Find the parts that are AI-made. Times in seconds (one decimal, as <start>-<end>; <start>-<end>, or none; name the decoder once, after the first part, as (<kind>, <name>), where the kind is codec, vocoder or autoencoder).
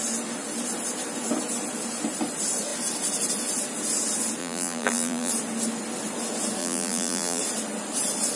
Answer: 4.4-5.3 (vocoder, BigVGAN v2); 6.6-7.4